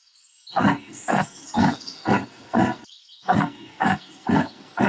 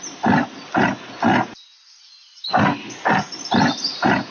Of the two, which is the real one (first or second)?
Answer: second